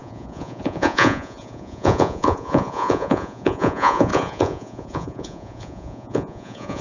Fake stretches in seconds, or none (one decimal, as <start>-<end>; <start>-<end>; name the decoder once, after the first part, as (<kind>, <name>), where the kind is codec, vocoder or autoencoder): 0.0-6.8 (vocoder, Vocos)

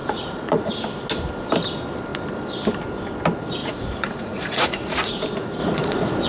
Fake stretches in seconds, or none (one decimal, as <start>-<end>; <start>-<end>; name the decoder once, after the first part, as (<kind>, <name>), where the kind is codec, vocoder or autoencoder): 0.0-0.7 (vocoder, Vocos); 3.6-5.1; 5.6-6.3

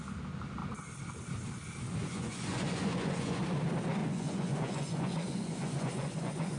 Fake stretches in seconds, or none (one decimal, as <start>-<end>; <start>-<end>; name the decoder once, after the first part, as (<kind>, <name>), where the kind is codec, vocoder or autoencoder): 2.0-3.4 (vocoder, Vocos); 4.0-6.6